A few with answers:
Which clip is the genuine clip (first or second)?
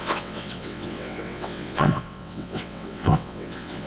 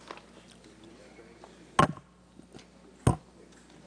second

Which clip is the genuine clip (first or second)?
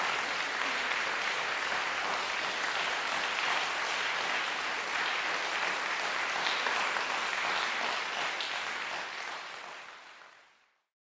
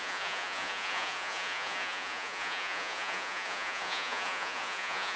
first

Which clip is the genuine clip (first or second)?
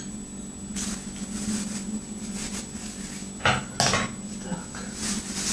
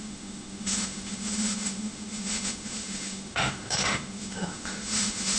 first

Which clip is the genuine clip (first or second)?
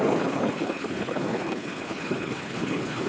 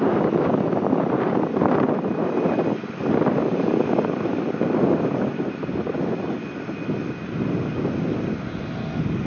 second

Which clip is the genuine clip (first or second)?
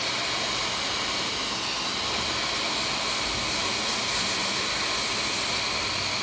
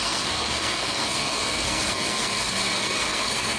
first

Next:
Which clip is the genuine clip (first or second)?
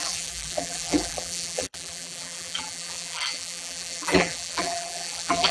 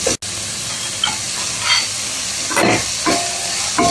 second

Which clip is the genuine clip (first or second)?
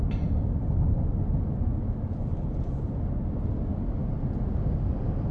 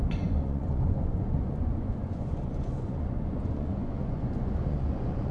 first